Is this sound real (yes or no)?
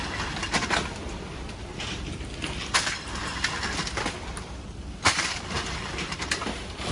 no